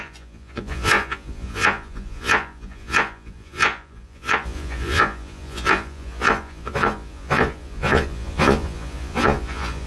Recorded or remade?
remade